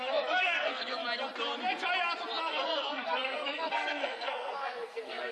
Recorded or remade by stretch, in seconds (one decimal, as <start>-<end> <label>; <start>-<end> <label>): 0.0-1.0 remade; 1.0-2.4 recorded; 2.4-5.3 remade